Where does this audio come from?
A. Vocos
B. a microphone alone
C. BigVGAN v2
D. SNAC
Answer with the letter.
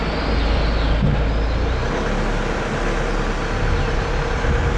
B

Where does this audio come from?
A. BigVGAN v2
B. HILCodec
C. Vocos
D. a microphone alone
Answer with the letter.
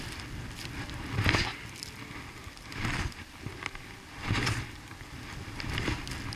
D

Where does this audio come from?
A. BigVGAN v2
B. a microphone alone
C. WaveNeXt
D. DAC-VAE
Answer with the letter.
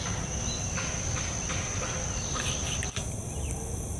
B